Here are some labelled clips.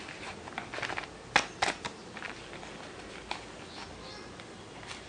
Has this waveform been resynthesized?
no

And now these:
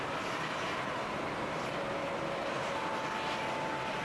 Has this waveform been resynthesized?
no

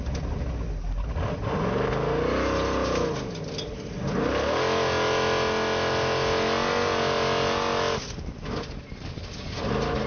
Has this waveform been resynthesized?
no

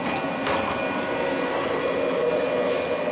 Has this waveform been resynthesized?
no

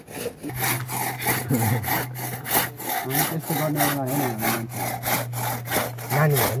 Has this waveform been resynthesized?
no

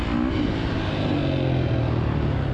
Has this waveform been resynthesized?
no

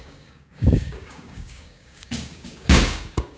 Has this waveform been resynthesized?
yes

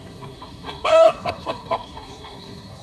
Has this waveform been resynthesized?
yes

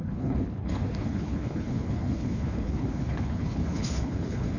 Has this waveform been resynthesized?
yes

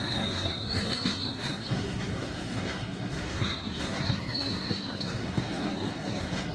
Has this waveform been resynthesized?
yes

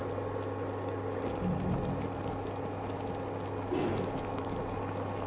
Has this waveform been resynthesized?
no